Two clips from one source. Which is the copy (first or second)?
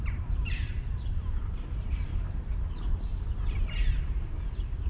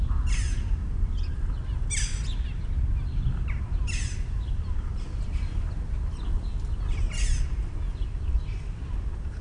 first